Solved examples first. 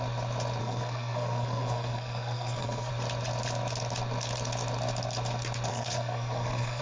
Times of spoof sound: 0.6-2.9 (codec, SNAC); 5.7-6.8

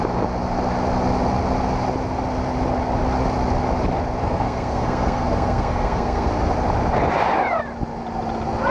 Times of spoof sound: 4.2-6.3 (codec, SNAC)

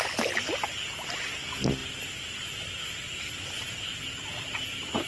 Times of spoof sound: none